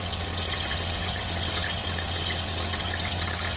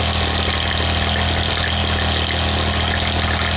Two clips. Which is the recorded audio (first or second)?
second